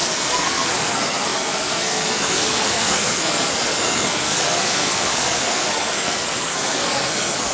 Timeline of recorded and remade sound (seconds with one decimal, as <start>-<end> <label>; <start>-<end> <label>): 0.0-7.5 remade

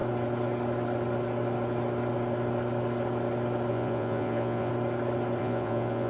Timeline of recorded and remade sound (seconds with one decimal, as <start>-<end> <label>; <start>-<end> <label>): 0.0-3.7 recorded; 3.7-4.7 remade; 4.7-5.4 recorded; 5.4-6.1 remade

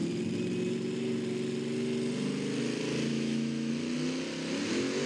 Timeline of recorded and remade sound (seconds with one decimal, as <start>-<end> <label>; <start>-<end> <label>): 0.0-3.1 recorded; 3.1-3.7 remade; 3.7-5.1 recorded

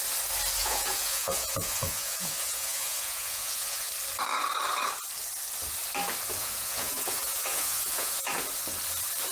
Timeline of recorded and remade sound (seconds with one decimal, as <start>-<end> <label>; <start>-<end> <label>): 0.0-0.6 recorded; 0.6-3.9 remade; 3.9-6.4 recorded; 6.4-8.3 remade; 8.3-9.3 recorded

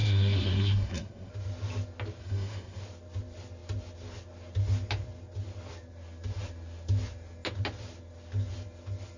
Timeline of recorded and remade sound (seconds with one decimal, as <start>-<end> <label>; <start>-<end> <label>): 0.0-1.3 remade; 1.3-2.2 recorded; 2.2-2.8 remade; 2.8-9.2 recorded

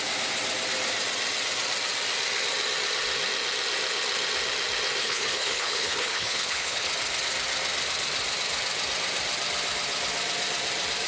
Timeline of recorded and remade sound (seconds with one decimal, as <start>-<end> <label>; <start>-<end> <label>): 0.0-5.0 recorded; 5.0-6.9 remade; 6.9-11.1 recorded